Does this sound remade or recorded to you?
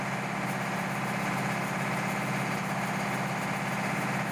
recorded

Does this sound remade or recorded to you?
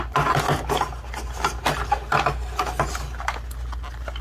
recorded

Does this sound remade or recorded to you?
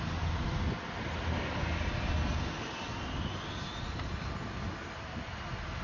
recorded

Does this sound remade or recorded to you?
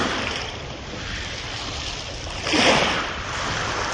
remade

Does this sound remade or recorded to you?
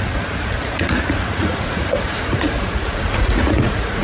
remade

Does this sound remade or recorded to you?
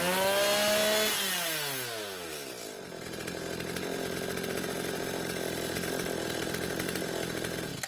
recorded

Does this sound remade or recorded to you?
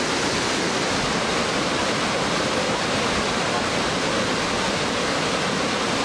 recorded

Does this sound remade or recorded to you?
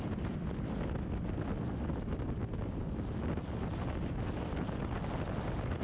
recorded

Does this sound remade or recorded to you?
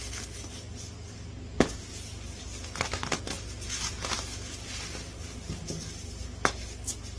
recorded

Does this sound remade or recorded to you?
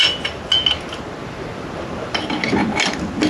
recorded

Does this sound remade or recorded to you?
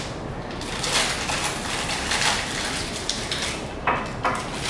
recorded